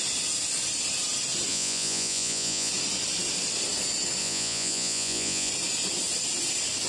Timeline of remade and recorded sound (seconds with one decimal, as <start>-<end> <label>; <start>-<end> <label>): 0.0-1.5 recorded; 1.5-2.7 remade; 2.7-4.2 recorded; 4.2-5.5 remade; 5.5-6.9 recorded

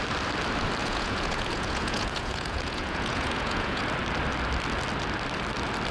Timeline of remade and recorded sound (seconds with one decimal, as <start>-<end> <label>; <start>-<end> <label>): 0.0-0.8 recorded; 0.8-3.8 remade; 3.8-5.9 recorded

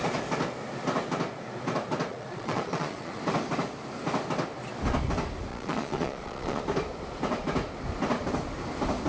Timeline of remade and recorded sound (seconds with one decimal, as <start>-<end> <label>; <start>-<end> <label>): 0.0-2.1 recorded; 2.1-3.2 remade; 3.2-5.5 recorded; 5.5-6.6 remade; 6.6-9.1 recorded

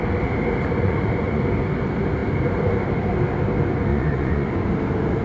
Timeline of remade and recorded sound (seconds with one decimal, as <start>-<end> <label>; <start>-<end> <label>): 0.0-0.8 recorded; 0.8-1.4 remade; 1.4-3.9 recorded; 3.9-4.5 remade; 4.5-5.2 recorded

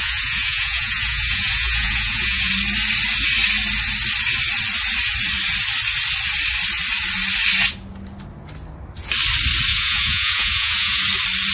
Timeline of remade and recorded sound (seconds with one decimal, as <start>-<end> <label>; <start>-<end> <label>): 0.0-2.5 remade; 2.5-9.7 recorded; 9.7-11.0 remade; 11.0-11.5 recorded

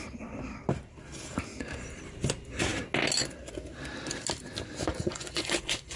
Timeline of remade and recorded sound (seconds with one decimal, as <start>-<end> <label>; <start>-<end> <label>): 0.0-4.9 recorded; 4.9-6.0 remade

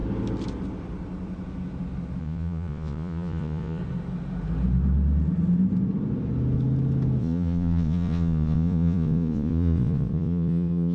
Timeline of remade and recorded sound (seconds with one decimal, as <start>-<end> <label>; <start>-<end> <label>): 0.0-2.2 recorded; 2.2-3.8 remade; 3.8-7.2 recorded; 7.2-10.9 remade